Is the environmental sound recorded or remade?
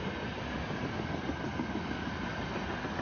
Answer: recorded